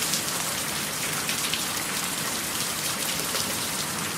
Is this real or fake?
real